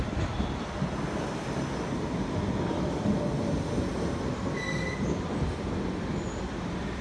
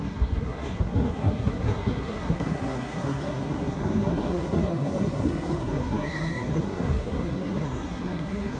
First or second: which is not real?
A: second